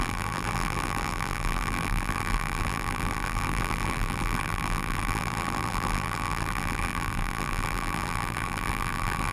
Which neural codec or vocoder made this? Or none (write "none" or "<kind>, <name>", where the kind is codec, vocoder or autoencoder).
vocoder, BigVGAN v2